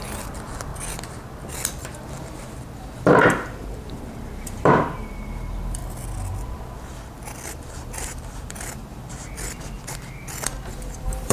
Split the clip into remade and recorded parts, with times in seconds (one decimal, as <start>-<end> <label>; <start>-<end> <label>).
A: 0.0-0.7 remade; 0.7-1.7 recorded; 1.7-5.8 remade; 5.8-6.3 recorded; 6.3-11.3 remade